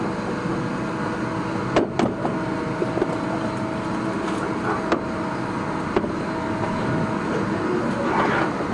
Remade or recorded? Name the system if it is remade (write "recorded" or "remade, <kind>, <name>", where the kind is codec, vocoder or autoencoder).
recorded